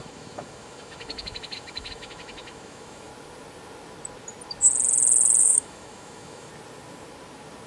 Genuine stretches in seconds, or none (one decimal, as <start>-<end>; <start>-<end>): 3.1-5.4; 6.5-7.7